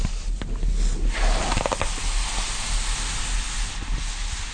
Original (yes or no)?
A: yes